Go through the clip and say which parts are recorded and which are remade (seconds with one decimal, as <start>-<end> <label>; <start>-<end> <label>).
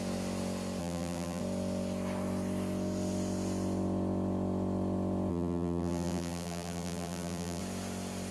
0.0-0.8 recorded; 0.8-1.4 remade; 1.4-5.3 recorded; 5.3-7.6 remade; 7.6-8.3 recorded